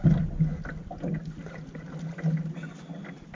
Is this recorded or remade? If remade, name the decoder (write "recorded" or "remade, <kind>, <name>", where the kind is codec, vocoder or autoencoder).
recorded